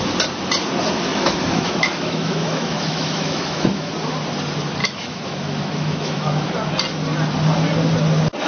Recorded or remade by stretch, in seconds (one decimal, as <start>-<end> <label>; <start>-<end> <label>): 0.0-1.1 recorded; 1.1-3.9 remade; 3.9-4.8 recorded; 4.8-6.5 remade; 6.5-8.5 recorded